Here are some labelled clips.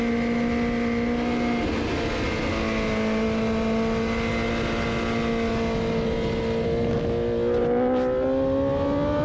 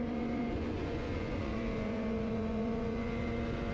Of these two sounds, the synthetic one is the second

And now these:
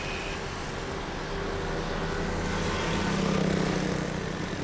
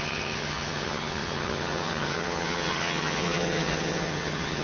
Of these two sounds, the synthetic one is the second